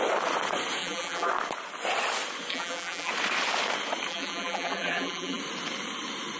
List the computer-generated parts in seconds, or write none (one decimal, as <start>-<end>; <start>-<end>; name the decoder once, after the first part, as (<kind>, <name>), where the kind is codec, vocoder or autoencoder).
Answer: 0.8-1.3 (vocoder, BigVGAN v2); 2.5-3.1; 4.1-5.4